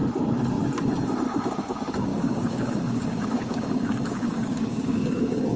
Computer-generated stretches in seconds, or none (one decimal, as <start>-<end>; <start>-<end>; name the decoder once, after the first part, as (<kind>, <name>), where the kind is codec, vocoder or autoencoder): 1.4-5.6 (codec, DAC)